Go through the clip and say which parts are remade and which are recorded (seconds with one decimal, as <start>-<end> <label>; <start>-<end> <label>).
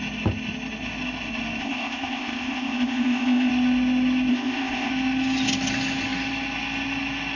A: 0.0-1.6 recorded; 1.6-3.5 remade; 3.5-4.3 recorded; 4.3-4.9 remade; 4.9-7.4 recorded